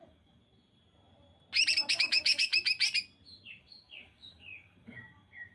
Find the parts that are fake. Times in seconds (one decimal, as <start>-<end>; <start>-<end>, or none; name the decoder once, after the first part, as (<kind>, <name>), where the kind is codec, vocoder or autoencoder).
0.0-0.4 (codec, DAC); 1.9-2.5; 3.6-5.5